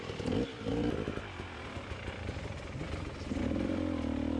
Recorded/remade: recorded